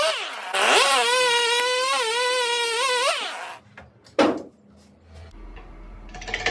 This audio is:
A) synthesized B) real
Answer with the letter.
B